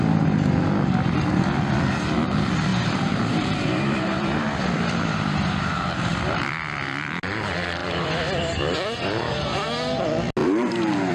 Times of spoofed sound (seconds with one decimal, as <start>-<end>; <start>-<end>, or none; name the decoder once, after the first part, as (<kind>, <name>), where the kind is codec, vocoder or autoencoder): 2.7-6.5 (vocoder, BigVGAN v2); 10.4-11.1